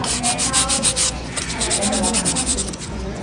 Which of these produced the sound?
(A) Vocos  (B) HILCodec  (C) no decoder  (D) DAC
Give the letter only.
A